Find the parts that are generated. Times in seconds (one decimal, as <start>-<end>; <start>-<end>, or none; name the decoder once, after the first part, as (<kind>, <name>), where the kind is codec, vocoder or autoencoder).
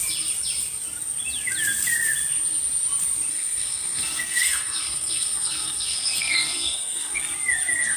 3.3-7.2 (codec, SNAC)